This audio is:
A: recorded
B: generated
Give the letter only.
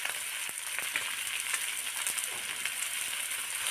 A